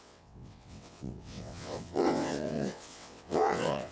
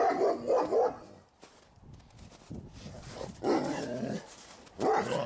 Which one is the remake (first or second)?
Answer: first